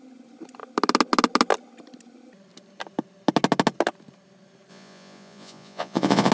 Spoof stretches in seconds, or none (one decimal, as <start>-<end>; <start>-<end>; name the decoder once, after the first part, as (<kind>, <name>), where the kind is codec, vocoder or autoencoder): 4.7-6.3 (vocoder, Vocos)